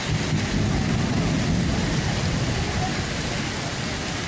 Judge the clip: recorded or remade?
recorded